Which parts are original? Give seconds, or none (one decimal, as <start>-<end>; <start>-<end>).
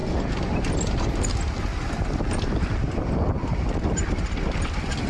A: 0.0-5.1